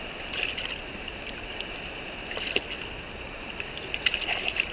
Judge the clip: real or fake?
real